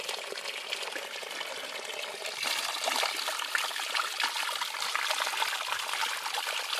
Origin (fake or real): real